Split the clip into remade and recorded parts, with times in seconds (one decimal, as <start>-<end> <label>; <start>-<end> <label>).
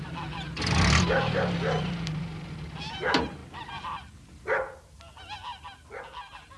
0.0-6.6 recorded